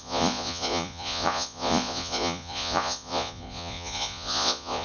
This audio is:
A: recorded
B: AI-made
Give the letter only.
B